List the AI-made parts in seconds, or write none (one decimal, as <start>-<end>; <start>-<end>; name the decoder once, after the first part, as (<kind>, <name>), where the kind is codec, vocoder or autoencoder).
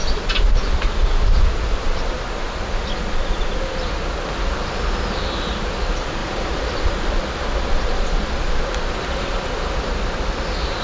none